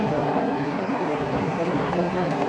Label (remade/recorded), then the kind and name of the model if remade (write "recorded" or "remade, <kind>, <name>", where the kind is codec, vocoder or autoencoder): remade, codec, SNAC